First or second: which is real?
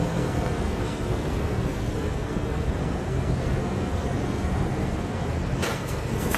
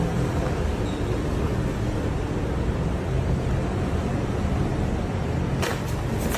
second